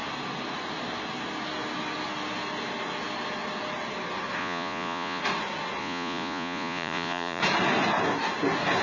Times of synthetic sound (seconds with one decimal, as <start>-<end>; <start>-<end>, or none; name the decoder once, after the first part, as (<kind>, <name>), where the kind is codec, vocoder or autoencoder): 4.4-5.2 (vocoder, Vocos); 5.8-7.4